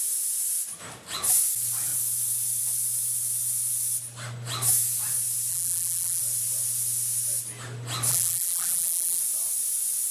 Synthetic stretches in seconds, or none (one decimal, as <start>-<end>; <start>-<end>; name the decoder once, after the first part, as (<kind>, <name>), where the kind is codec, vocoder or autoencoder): 5.5-6.2 (vocoder, BigVGAN v2); 8.1-9.2